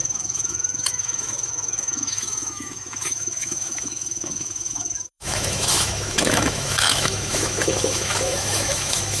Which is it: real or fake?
fake